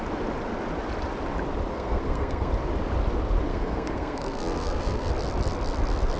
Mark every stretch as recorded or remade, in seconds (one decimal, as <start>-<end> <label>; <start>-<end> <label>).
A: 0.0-1.7 recorded; 1.7-2.5 remade; 2.5-3.5 recorded; 3.5-5.1 remade; 5.1-6.2 recorded